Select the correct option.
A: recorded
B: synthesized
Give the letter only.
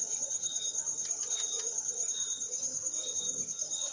B